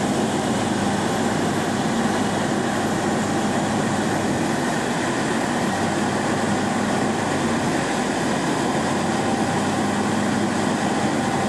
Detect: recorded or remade recorded